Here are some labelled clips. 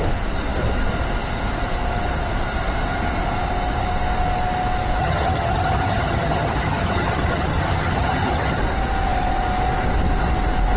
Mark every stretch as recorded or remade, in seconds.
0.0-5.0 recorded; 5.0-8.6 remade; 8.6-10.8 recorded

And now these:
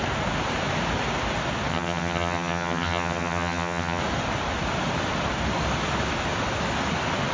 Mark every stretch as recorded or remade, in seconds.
0.0-1.7 recorded; 1.7-4.0 remade; 4.0-7.3 recorded

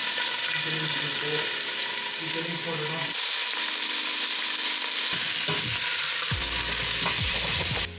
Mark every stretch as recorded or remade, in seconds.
0.0-8.0 recorded